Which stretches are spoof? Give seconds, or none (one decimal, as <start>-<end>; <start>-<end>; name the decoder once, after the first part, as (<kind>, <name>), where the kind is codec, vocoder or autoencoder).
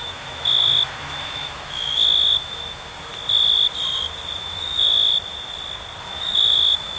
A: 0.0-3.1 (autoencoder, DAC-VAE); 4.4-5.1; 6.0-7.0